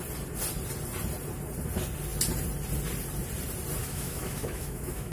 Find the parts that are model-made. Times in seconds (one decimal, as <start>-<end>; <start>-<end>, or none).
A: 3.8-5.1